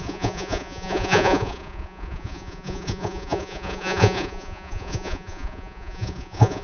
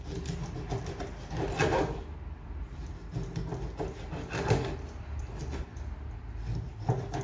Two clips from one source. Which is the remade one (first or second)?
first